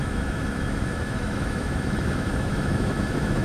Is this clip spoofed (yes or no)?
yes